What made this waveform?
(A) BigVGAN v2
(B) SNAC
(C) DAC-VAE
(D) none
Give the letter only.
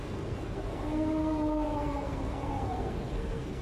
B